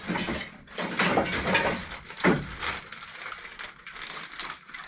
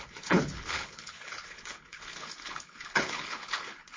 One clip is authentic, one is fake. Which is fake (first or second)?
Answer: second